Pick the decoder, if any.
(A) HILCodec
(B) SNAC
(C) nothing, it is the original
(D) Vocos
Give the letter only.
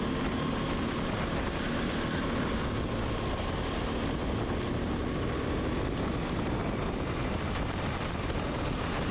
C